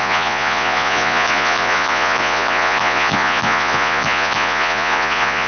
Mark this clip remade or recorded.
remade